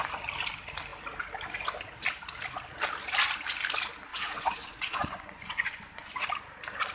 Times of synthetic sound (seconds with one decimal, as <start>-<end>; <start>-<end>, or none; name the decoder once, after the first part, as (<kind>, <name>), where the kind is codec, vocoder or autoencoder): 4.1-6.1 (vocoder, Vocos)